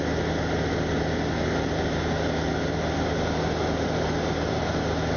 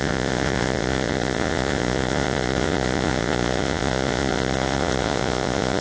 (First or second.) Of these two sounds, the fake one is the second